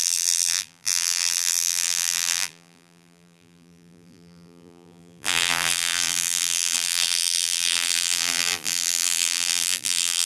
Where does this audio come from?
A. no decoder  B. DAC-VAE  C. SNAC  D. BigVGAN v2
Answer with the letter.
D